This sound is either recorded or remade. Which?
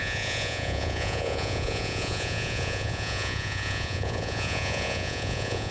remade